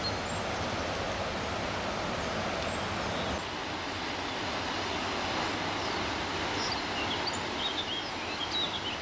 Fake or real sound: real